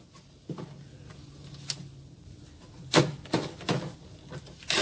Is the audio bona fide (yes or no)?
yes